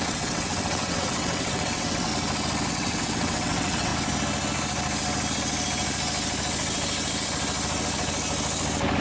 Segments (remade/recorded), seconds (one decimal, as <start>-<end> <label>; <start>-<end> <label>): 0.0-2.1 remade; 2.1-2.7 recorded; 2.7-3.9 remade; 3.9-9.0 recorded